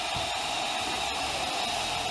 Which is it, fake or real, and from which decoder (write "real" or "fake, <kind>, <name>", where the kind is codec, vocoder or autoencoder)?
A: real